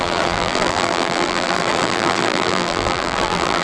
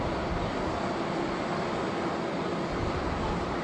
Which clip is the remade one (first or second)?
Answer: first